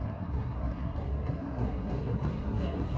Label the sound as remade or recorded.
remade